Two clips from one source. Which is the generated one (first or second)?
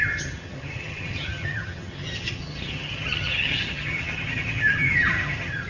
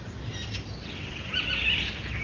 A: first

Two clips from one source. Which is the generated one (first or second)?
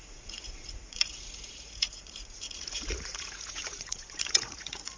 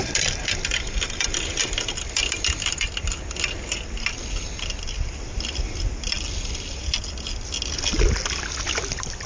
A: first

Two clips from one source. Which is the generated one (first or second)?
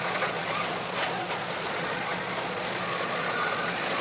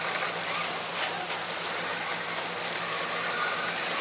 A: first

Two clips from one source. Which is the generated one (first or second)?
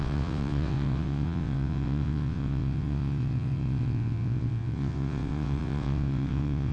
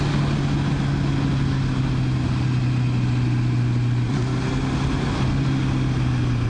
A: first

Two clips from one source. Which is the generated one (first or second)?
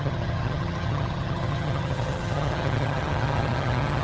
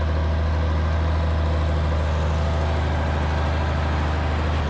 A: first